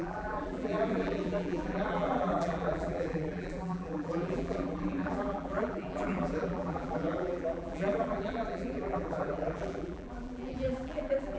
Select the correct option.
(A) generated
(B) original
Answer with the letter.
A